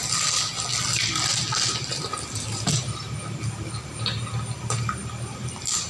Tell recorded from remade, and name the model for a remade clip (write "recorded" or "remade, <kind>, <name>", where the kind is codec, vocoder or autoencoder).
recorded